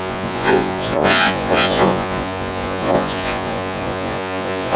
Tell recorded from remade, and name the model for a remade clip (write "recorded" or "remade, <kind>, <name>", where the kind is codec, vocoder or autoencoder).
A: remade, vocoder, Vocos